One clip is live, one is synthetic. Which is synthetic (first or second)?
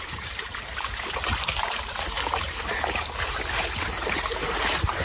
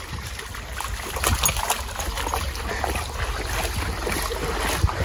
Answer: first